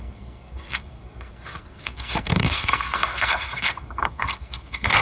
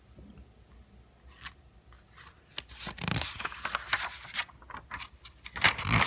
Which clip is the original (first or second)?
second